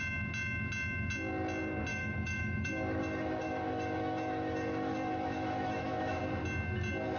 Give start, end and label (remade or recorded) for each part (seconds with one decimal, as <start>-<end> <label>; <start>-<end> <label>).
0.0-1.9 recorded; 1.9-6.2 remade; 6.2-7.2 recorded